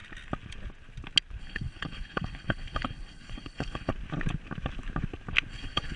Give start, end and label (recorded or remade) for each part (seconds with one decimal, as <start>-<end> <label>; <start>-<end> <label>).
0.0-1.4 recorded; 1.4-3.9 remade; 3.9-5.5 recorded; 5.5-6.0 remade